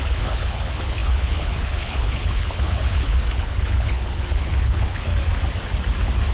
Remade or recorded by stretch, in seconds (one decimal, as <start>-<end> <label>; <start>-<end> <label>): 0.0-5.1 remade; 5.1-6.3 recorded